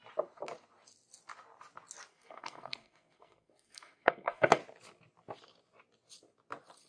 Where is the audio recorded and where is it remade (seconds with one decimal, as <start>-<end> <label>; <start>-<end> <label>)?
0.0-2.1 recorded; 2.1-4.6 remade; 4.6-6.9 recorded